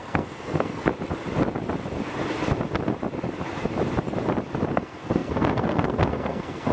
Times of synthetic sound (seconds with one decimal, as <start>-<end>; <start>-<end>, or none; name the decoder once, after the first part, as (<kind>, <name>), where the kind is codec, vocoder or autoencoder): 0.0-0.9 (codec, SNAC); 4.7-6.7